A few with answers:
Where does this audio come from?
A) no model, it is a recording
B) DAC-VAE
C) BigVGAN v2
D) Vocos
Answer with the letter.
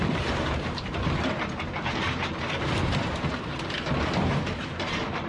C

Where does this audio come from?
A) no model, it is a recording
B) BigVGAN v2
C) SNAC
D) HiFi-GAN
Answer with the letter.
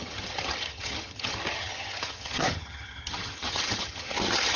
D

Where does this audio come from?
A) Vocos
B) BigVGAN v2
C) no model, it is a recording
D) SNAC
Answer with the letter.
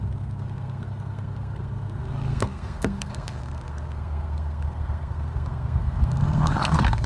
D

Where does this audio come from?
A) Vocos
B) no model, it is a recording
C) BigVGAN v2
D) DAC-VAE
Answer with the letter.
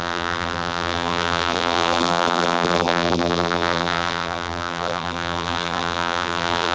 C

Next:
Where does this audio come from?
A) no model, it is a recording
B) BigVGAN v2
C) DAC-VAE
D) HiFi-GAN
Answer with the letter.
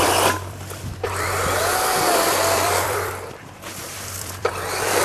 B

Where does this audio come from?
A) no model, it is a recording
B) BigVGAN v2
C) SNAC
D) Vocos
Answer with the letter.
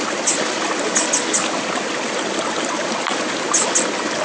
A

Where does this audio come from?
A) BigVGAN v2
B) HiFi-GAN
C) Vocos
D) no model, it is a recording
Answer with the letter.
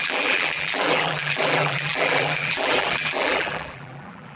A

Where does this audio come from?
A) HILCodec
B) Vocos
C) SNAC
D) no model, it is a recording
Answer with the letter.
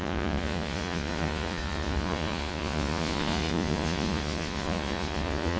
B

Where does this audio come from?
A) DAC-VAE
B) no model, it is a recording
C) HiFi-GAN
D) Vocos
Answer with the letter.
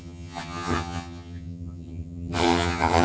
C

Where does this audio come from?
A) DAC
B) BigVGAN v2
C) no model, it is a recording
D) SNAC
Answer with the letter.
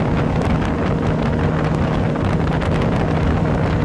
C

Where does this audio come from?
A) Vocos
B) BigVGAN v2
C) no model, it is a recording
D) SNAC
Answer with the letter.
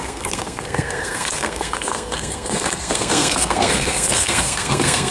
D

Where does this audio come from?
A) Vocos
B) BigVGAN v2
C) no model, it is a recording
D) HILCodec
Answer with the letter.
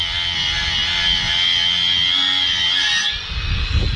C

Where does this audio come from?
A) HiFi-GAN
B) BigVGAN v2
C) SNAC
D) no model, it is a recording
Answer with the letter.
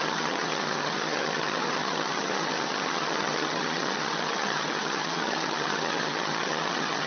A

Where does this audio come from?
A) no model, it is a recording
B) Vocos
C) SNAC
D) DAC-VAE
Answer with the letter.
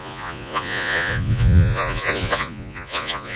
B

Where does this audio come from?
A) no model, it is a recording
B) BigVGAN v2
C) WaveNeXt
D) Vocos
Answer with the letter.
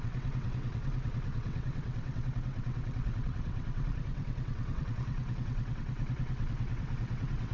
C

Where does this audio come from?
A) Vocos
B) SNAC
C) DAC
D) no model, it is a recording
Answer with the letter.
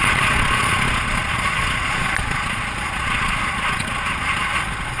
A